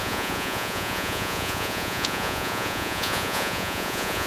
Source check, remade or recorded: remade